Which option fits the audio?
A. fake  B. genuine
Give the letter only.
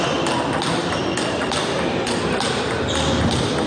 B